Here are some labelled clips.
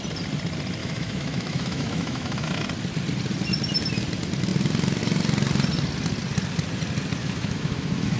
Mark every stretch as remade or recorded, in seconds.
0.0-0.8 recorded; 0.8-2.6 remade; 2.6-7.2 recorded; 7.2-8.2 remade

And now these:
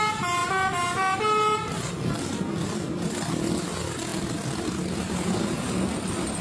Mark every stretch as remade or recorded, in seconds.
0.0-6.4 recorded

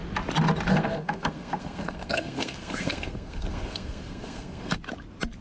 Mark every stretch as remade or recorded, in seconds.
0.0-0.7 recorded; 0.7-4.8 remade; 4.8-5.4 recorded

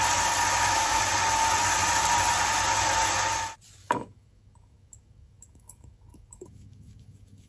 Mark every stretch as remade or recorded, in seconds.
0.0-0.5 recorded; 0.5-1.0 remade; 1.0-3.8 recorded; 3.8-7.5 remade

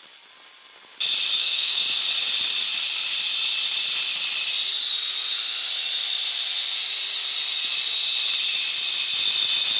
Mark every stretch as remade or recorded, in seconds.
0.0-1.4 recorded; 1.4-2.0 remade; 2.0-9.8 recorded

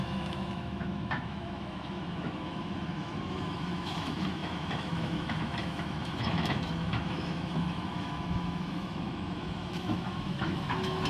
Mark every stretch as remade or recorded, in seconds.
0.0-11.1 remade

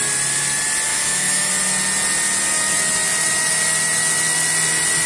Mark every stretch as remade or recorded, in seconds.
0.0-0.9 recorded; 0.9-1.5 remade; 1.5-5.1 recorded

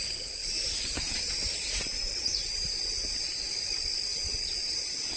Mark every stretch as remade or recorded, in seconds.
0.0-0.4 recorded; 0.4-3.5 remade; 3.5-4.1 recorded; 4.1-5.2 remade